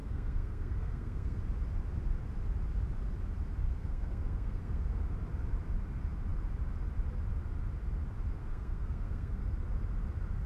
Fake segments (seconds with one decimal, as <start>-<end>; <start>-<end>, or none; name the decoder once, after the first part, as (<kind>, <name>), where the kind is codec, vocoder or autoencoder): 0.0-1.4 (codec, SNAC); 3.6-4.9; 8.4-9.4